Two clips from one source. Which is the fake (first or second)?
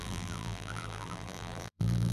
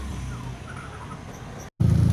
first